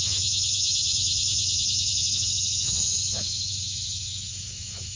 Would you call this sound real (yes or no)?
no